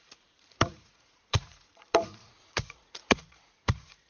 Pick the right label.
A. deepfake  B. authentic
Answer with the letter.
A